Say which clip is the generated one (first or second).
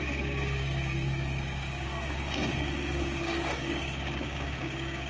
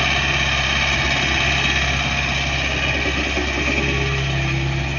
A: first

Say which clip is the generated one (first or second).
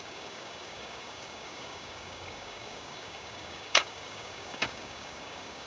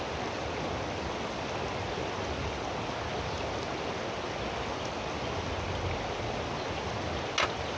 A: first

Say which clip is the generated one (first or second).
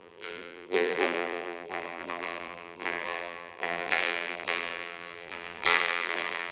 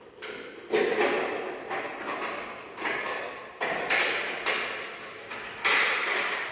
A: first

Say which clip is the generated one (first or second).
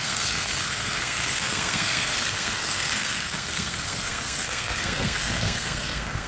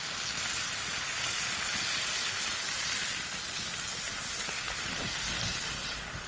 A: first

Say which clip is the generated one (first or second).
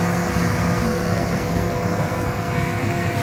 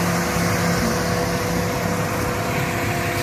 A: first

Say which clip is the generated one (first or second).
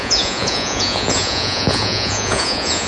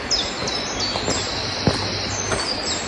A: first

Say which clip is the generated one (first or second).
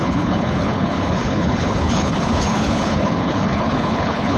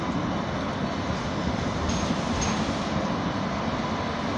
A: first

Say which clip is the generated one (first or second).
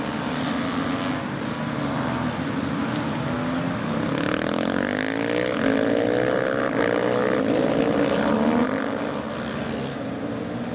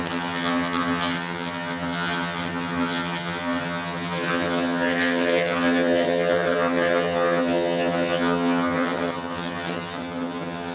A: second